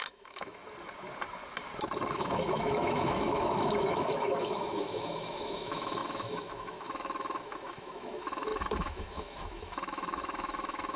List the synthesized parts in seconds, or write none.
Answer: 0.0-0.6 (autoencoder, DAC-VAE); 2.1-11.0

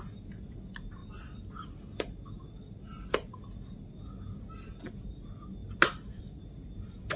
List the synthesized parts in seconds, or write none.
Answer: 5.6-7.2 (vocoder, BigVGAN v2)

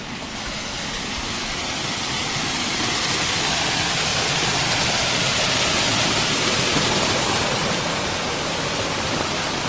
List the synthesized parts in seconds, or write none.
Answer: none

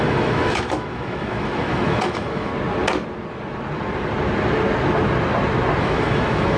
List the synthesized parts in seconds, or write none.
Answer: 0.0-2.5 (autoencoder, DAC-VAE); 5.8-6.6

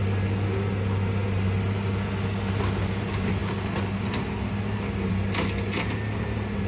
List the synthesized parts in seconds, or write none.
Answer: none

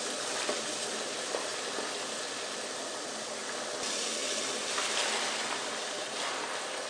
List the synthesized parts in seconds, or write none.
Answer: none

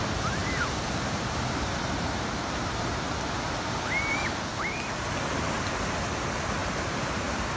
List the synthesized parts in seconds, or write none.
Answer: 0.4-3.4 (vocoder, BigVGAN v2); 6.6-7.6

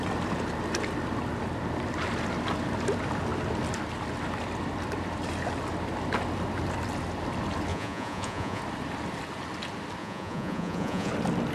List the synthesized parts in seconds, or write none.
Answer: 7.7-8.6 (vocoder, Vocos); 10.0-11.1